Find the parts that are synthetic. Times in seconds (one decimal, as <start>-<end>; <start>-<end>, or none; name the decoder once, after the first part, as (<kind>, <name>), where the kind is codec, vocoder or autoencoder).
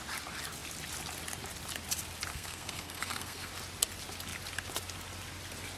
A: 2.3-3.5 (codec, SNAC)